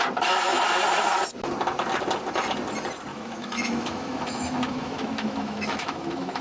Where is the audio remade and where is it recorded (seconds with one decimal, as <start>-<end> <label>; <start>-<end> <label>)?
0.0-3.1 recorded; 3.1-6.4 remade

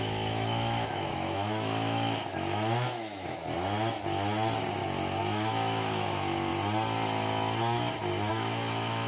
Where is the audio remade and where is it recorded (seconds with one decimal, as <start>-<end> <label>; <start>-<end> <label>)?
0.0-3.4 remade; 3.4-5.2 recorded; 5.2-6.5 remade; 6.5-8.3 recorded; 8.3-9.1 remade

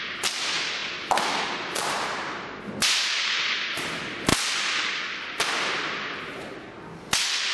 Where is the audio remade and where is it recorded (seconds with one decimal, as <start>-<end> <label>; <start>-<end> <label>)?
0.0-7.5 recorded

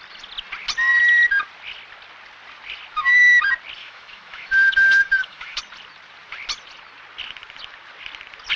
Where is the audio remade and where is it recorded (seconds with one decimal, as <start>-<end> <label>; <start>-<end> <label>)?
0.0-3.8 recorded; 3.8-5.6 remade; 5.6-8.6 recorded

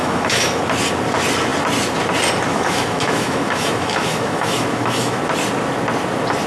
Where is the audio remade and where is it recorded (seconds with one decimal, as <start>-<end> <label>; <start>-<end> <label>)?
0.0-0.6 remade; 0.6-2.5 recorded; 2.5-5.2 remade; 5.2-6.5 recorded

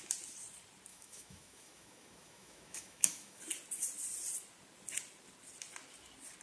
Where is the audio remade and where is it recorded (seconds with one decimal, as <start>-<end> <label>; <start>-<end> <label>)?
0.0-0.9 recorded; 0.9-3.4 remade; 3.4-6.4 recorded

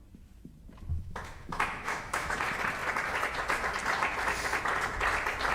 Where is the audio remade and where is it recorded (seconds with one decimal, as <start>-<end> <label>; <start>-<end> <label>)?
0.0-0.9 recorded; 0.9-2.4 remade; 2.4-5.5 recorded

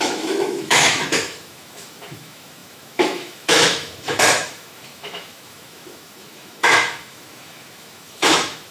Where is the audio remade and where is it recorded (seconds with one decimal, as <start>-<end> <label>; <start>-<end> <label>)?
0.0-8.7 remade